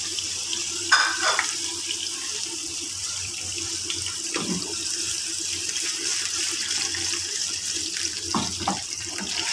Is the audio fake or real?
fake